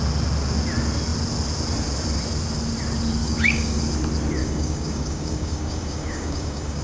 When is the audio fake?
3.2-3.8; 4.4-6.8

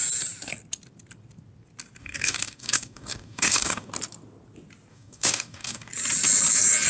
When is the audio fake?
2.0-3.9; 4.9-5.9

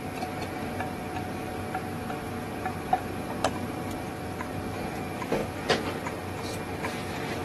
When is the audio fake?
none

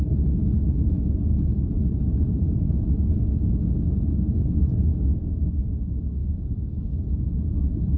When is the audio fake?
4.9-5.7; 6.2-7.1

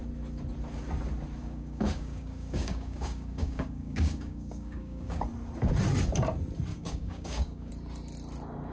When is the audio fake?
1.4-5.2; 6.7-7.7

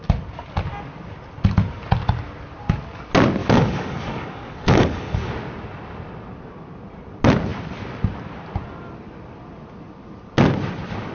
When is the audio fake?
3.4-5.3

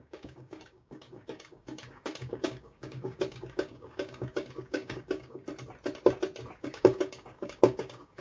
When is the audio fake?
0.0-5.4; 6.6-8.2

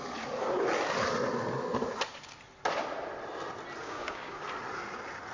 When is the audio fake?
3.8-4.4